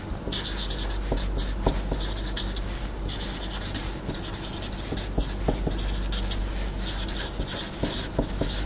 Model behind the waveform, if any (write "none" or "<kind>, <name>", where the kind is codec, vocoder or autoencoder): none